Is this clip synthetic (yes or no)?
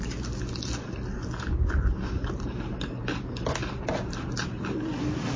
no